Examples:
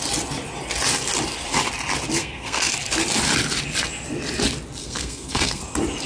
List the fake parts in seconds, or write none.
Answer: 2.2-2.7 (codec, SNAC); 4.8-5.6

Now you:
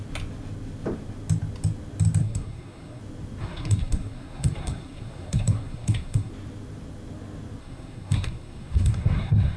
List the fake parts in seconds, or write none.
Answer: 2.2-3.0 (codec, SNAC); 3.4-6.3; 7.6-9.6